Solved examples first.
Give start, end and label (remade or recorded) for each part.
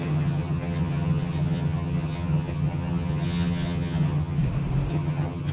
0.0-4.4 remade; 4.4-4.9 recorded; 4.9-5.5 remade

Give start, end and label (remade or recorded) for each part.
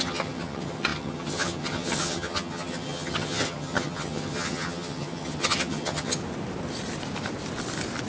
0.0-6.2 remade; 6.2-8.1 recorded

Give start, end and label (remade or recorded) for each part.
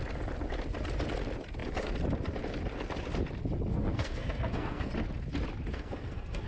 0.0-3.7 recorded; 3.7-4.9 remade; 4.9-5.7 recorded; 5.7-6.5 remade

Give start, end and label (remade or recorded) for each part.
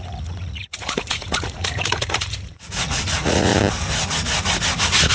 0.0-3.5 remade; 3.5-5.1 recorded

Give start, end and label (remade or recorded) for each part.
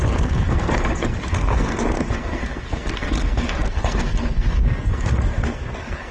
0.0-6.1 remade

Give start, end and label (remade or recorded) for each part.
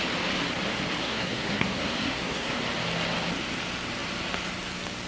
0.0-1.0 recorded; 1.0-2.6 remade; 2.6-5.1 recorded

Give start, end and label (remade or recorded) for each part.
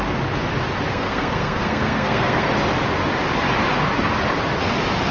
0.0-0.9 recorded; 0.9-2.5 remade; 2.5-5.1 recorded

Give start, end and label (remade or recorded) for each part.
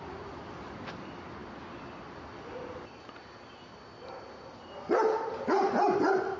0.0-6.4 recorded